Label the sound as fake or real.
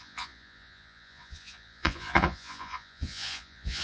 fake